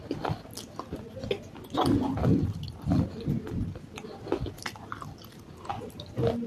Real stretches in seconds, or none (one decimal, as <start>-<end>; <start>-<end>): 0.0-6.5